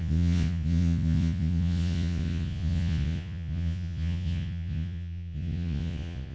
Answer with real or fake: fake